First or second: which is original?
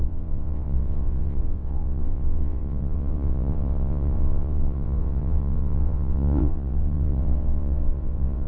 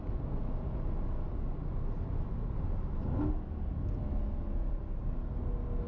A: second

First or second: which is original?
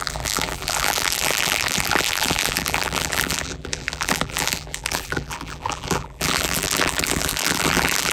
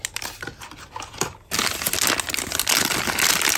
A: second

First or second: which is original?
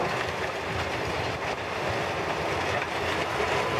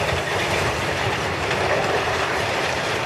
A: first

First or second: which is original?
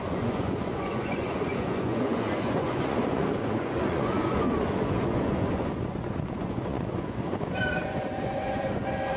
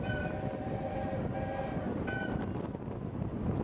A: second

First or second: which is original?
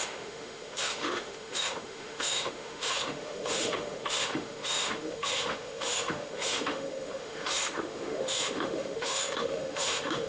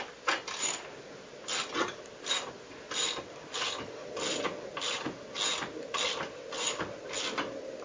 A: second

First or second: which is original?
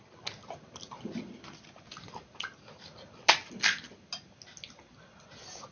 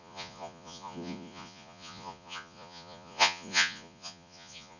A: first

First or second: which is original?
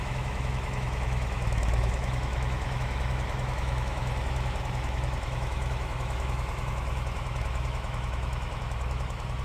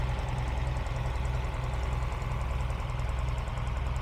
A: second